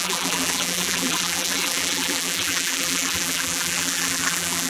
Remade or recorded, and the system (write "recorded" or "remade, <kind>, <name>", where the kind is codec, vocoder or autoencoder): remade, vocoder, BigVGAN v2